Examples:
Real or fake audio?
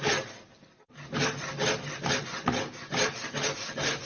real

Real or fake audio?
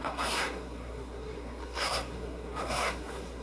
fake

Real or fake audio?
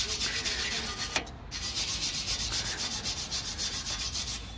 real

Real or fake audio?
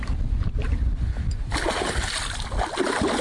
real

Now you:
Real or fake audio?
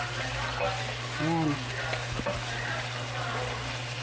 real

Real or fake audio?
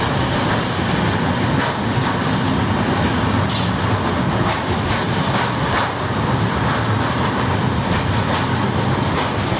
real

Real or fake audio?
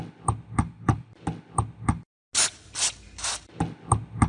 real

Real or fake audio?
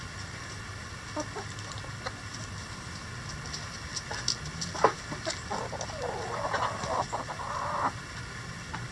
real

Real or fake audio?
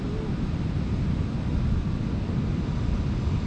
real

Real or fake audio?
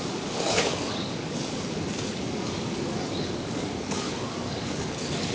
fake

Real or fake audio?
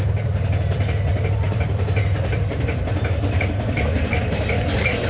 fake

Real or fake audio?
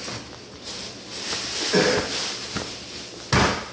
real